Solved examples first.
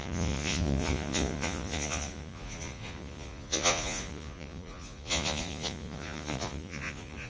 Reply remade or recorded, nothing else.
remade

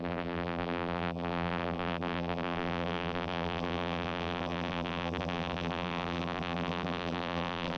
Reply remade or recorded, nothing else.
remade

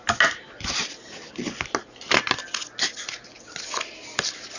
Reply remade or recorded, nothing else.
recorded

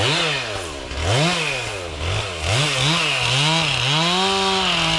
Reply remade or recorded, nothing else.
recorded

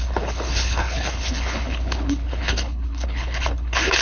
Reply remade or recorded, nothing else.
remade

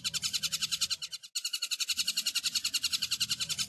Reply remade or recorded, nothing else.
recorded